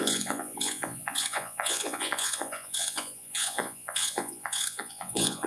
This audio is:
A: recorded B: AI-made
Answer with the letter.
B